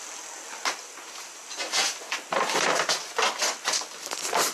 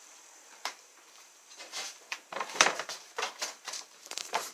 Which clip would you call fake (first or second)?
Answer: second